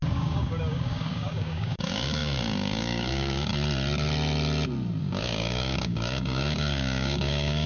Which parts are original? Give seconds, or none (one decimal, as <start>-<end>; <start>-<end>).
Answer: 3.5-5.0